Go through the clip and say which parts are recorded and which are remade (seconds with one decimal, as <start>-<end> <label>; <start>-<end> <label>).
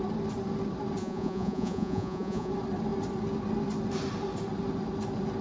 0.0-1.0 recorded; 1.0-2.5 remade; 2.5-5.4 recorded